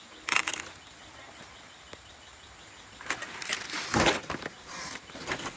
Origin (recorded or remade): recorded